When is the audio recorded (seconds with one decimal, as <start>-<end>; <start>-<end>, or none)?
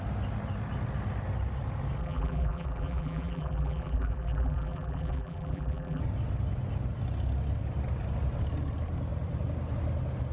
0.0-2.0; 6.0-10.3